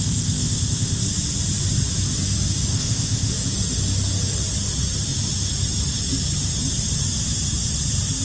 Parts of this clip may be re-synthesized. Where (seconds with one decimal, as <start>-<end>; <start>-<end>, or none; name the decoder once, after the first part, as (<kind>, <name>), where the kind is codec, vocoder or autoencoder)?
0.0-1.0 (codec, ZipCodec); 2.7-3.3